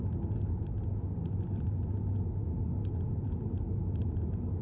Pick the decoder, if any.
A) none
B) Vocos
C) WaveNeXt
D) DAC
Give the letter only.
A